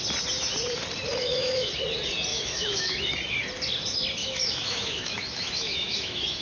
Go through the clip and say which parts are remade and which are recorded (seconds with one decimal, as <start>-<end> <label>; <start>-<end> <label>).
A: 0.0-1.2 recorded; 1.2-1.7 remade; 1.7-2.3 recorded; 2.3-3.1 remade; 3.1-4.2 recorded; 4.2-6.4 remade